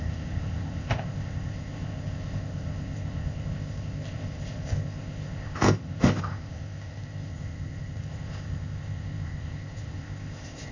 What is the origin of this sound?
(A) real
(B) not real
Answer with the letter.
B